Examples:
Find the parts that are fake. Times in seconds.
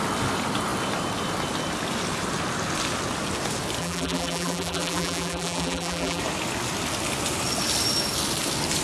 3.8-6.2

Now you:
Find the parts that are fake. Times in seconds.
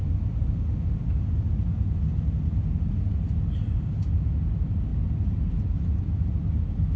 none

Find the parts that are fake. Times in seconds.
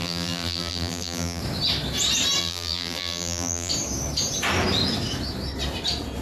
0.0-1.4; 2.4-3.7